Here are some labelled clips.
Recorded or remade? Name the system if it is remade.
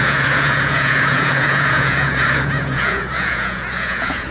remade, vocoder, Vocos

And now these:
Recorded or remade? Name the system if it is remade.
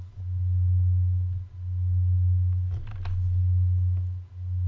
recorded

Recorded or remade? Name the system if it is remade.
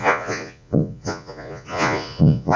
remade, vocoder, Vocos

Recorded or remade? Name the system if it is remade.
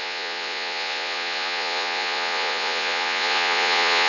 remade, vocoder, Vocos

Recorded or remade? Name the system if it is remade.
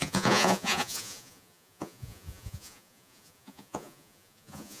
remade, vocoder, Vocos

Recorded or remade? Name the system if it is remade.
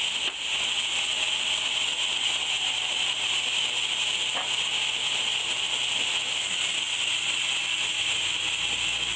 recorded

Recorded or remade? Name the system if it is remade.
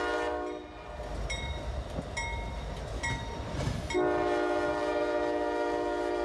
recorded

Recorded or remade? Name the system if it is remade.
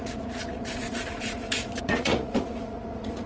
remade, vocoder, Vocos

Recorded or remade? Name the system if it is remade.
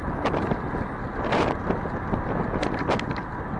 recorded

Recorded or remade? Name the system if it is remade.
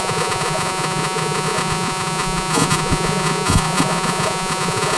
remade, vocoder, Vocos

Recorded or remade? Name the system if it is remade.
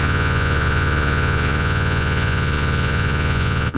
remade, vocoder, Vocos